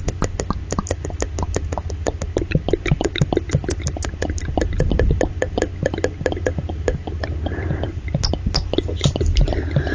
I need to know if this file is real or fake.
real